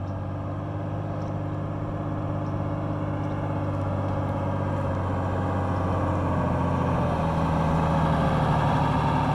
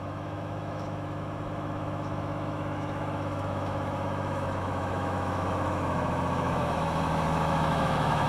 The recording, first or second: first